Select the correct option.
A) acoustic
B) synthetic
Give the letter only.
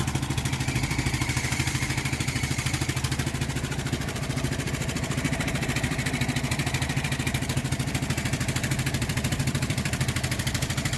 B